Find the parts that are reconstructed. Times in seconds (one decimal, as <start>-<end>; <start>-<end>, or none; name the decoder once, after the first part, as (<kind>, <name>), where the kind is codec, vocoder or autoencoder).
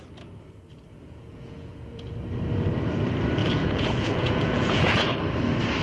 0.9-2.1 (vocoder, Vocos); 3.4-5.1